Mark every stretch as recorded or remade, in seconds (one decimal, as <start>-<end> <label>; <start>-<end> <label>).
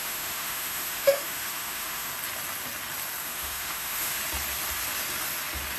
0.0-2.1 remade; 2.1-3.2 recorded; 3.2-4.2 remade; 4.2-5.8 recorded